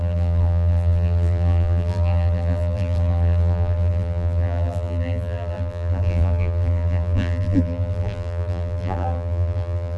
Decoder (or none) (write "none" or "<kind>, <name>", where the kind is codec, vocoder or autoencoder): vocoder, BigVGAN v2